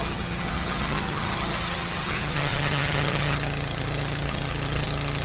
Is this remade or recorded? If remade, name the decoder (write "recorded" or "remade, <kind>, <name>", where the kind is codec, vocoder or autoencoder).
remade, vocoder, HiFi-GAN